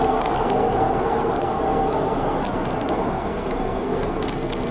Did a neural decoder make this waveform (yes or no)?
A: yes